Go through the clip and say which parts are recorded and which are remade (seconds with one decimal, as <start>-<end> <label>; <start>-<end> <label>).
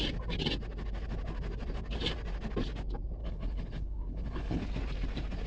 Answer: 0.0-3.2 recorded; 3.2-4.6 remade; 4.6-5.5 recorded